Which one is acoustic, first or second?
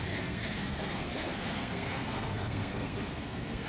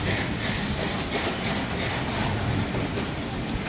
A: second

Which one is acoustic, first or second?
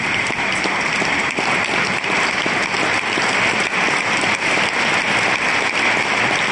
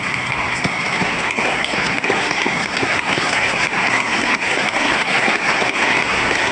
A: first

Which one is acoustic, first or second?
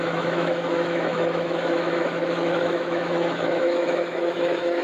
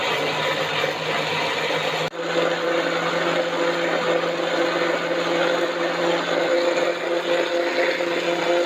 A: second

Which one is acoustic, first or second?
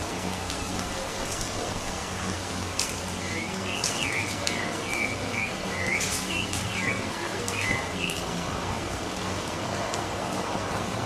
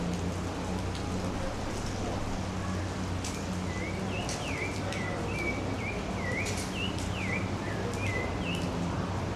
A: second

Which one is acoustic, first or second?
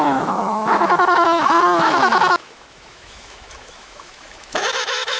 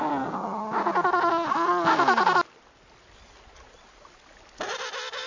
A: second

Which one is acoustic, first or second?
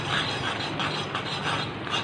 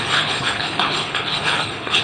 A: first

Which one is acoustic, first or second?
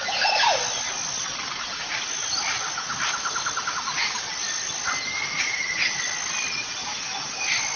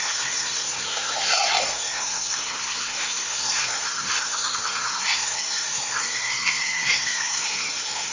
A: first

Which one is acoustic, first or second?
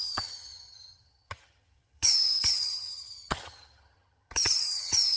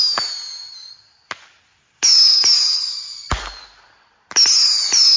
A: second